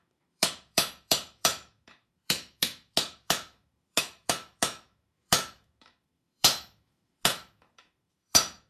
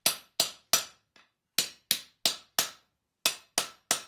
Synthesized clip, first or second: first